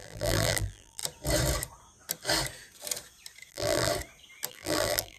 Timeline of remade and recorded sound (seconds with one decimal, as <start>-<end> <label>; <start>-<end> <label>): 0.0-1.0 remade; 1.0-3.5 recorded; 3.5-3.9 remade; 3.9-4.5 recorded; 4.5-5.2 remade

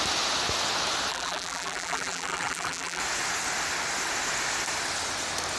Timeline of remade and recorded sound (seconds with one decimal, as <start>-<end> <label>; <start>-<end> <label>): 0.0-1.1 recorded; 1.1-3.0 remade; 3.0-5.6 recorded